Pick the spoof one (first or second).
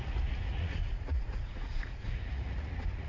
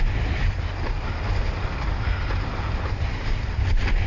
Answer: first